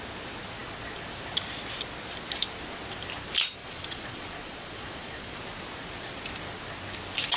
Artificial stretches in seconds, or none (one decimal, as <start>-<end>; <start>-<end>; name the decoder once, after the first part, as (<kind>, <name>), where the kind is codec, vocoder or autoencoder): 3.6-5.4 (vocoder, Vocos)